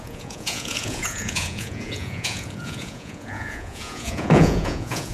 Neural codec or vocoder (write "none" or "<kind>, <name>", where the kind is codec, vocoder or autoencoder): vocoder, Vocos